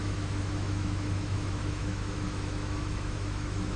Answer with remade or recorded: remade